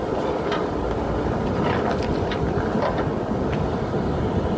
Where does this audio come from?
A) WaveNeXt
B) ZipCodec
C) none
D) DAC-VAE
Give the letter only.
C